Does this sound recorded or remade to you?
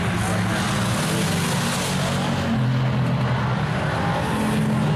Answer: recorded